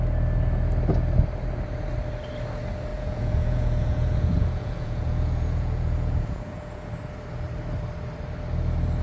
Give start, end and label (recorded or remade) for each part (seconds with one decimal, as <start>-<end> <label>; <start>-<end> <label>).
0.0-2.9 recorded; 2.9-6.9 remade; 6.9-9.0 recorded